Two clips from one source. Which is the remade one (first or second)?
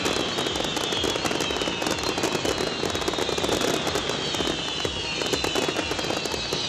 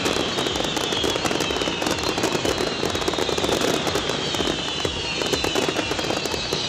second